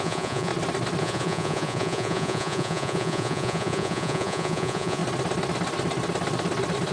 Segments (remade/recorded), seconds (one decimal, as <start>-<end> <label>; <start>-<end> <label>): 0.0-0.5 remade; 0.5-1.0 recorded; 1.0-5.0 remade; 5.0-6.9 recorded